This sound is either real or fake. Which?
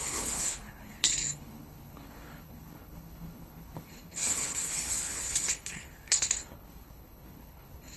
fake